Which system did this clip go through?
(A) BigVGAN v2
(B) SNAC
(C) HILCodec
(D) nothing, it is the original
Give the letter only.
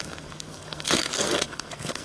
B